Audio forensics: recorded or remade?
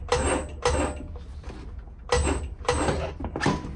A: recorded